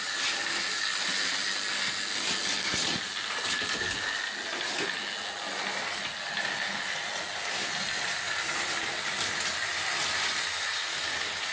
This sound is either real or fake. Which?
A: real